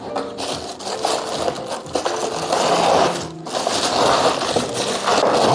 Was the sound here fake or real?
real